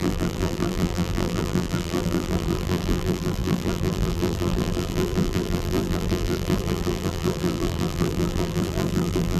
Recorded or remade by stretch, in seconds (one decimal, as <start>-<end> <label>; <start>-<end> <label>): 0.0-9.4 remade